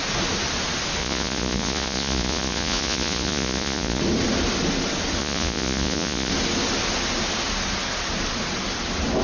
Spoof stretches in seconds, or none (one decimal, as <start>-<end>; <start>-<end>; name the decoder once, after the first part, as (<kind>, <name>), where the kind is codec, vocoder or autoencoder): 1.0-4.0 (vocoder, Vocos); 5.2-6.3